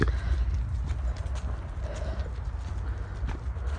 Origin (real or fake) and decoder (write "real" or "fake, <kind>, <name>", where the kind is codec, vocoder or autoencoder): real